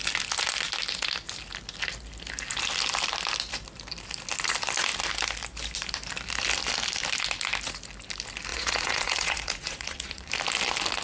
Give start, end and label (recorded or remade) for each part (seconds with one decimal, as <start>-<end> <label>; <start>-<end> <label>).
0.0-8.5 recorded; 8.5-10.3 remade; 10.3-11.0 recorded